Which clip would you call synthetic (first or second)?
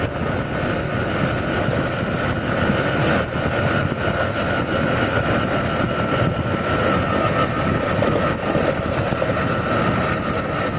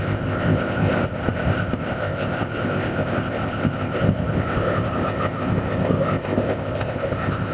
second